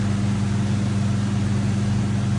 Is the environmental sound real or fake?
real